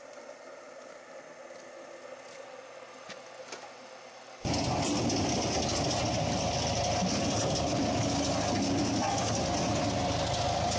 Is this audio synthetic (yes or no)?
no